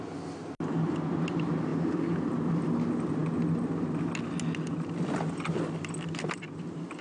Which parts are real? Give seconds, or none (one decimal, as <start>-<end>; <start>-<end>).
0.0-7.0